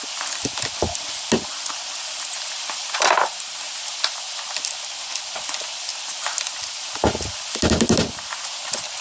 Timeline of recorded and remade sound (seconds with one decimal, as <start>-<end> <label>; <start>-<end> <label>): 0.0-9.0 recorded